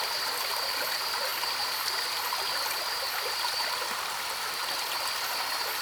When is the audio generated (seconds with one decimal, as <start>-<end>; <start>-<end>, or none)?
none